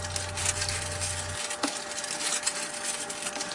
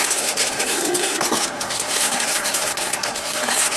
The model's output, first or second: second